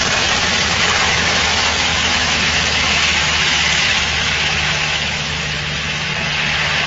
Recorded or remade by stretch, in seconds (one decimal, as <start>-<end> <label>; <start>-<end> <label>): 0.0-6.1 remade; 6.1-6.9 recorded